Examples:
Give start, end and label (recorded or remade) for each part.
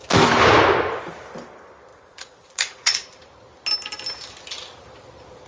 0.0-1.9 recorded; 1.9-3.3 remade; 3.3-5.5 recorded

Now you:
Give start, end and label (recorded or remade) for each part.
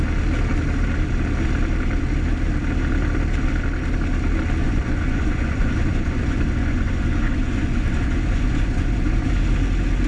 0.0-4.6 recorded; 4.6-9.3 remade; 9.3-10.1 recorded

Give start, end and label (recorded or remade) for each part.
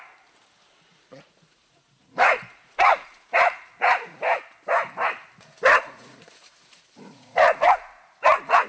0.0-0.9 recorded; 0.9-4.1 remade; 4.1-5.7 recorded; 5.7-8.7 remade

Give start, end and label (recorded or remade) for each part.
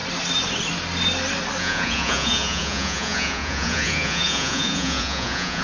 0.0-1.6 recorded; 1.6-5.6 remade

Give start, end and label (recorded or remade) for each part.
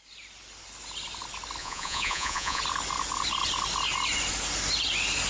0.0-1.6 recorded; 1.6-2.6 remade; 2.6-5.3 recorded